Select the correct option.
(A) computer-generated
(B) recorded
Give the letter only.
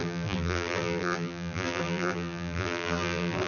A